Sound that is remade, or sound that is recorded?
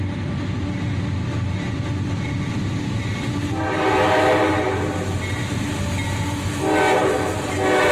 recorded